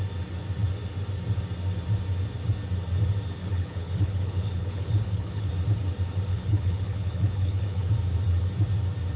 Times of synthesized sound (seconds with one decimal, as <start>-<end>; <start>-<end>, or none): 3.4-5.5; 6.3-7.9